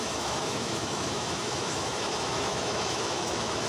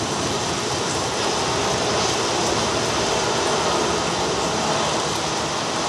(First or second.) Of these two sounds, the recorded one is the second